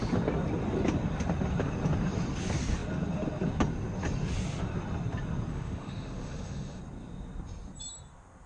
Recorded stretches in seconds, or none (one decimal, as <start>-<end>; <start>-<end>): 0.0-5.5; 6.8-8.5